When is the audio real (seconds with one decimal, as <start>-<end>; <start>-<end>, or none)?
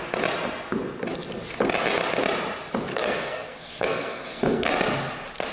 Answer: 0.0-2.9; 4.7-5.5